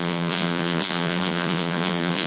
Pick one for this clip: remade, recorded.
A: remade